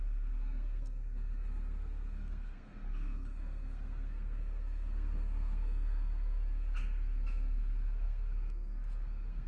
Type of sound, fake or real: fake